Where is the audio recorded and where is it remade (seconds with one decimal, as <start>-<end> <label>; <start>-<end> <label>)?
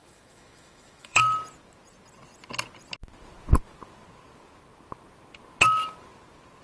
0.0-1.2 remade; 1.2-6.6 recorded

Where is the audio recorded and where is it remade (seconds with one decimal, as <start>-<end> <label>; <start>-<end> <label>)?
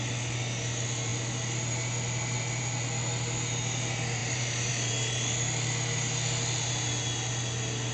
0.0-4.2 recorded; 4.2-4.9 remade; 4.9-7.9 recorded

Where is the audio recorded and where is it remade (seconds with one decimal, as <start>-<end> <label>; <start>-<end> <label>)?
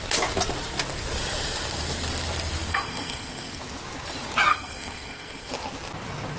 0.0-2.7 recorded; 2.7-3.6 remade; 3.6-4.5 recorded; 4.5-5.5 remade; 5.5-6.4 recorded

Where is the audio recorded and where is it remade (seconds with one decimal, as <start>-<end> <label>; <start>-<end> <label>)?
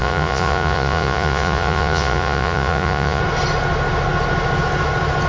0.0-3.2 remade; 3.2-5.3 recorded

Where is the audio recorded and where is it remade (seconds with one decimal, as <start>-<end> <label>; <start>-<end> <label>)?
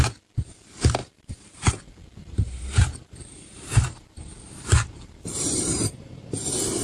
0.0-1.0 recorded; 1.0-1.7 remade; 1.7-2.2 recorded; 2.2-6.3 remade; 6.3-6.8 recorded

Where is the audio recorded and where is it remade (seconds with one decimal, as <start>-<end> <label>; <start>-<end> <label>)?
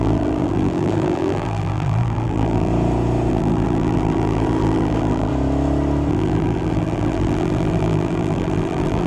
0.0-2.7 remade; 2.7-3.3 recorded; 3.3-5.3 remade; 5.3-6.1 recorded; 6.1-9.1 remade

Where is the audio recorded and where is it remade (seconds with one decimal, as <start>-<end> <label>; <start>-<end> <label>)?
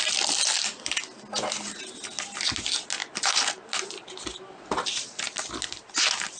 0.0-6.4 recorded